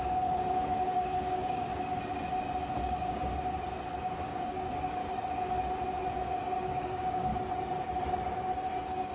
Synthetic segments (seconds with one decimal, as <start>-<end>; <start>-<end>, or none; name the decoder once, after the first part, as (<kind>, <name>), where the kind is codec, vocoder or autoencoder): 0.0-1.7 (codec, DAC); 2.8-3.3; 4.2-5.0; 6.1-7.3; 8.7-9.1